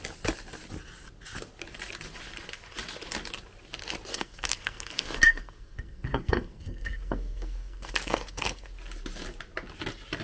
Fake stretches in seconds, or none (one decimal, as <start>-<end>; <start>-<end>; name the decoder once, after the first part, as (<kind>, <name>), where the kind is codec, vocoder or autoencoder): 4.1-8.7 (codec, SNAC)